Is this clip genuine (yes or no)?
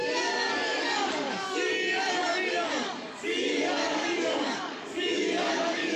no